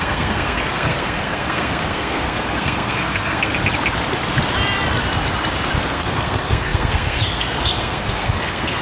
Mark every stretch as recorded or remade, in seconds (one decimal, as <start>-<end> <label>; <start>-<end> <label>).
0.0-3.5 remade; 3.5-5.8 recorded; 5.8-8.8 remade